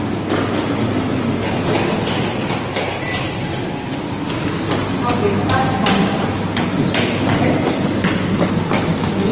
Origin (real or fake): real